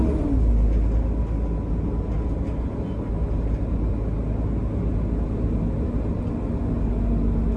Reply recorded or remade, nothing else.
recorded